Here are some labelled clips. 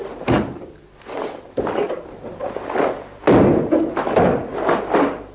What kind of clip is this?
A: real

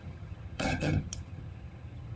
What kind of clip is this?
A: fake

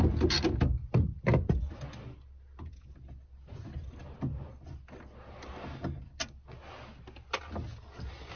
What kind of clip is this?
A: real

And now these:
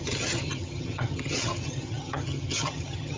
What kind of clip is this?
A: fake